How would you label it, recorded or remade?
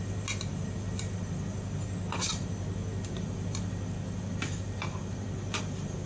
recorded